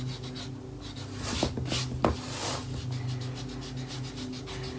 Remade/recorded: recorded